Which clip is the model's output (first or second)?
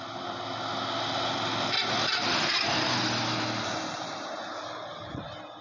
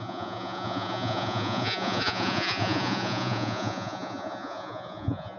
second